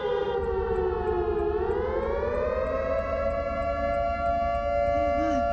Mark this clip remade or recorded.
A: recorded